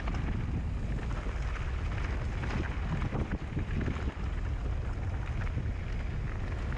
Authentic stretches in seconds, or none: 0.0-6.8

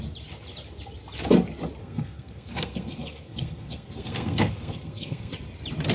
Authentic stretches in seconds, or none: 0.0-1.8; 5.3-5.9

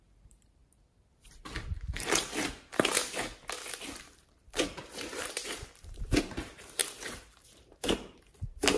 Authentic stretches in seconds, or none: 0.6-4.0